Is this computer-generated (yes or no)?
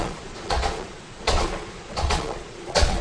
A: yes